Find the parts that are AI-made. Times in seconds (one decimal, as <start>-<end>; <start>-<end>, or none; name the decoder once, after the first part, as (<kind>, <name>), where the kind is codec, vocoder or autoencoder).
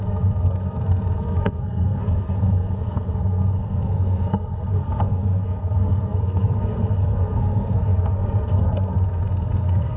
0.0-10.0 (codec, SNAC)